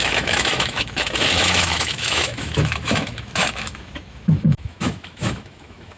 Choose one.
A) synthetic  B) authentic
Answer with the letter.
A